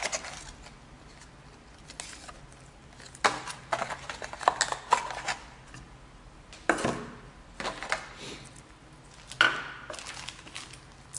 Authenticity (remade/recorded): recorded